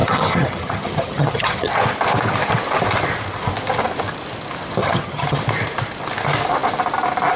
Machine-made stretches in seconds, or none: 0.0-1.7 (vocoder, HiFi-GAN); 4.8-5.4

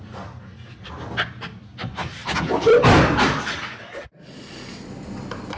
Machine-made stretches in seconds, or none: none

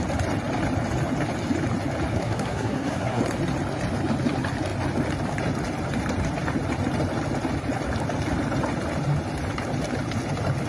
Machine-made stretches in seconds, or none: 2.1-3.2 (codec, SNAC)

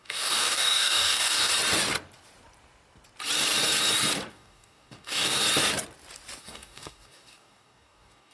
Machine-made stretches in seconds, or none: 0.0-1.5 (codec, DAC); 4.3-5.4; 6.4-8.3

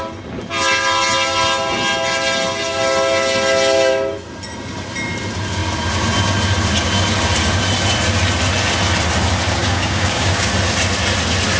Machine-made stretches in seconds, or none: 9.6-10.5 (codec, DAC)

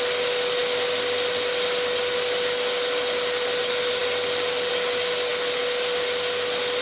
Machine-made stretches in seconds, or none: none

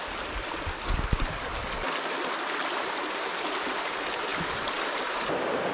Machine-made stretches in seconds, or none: none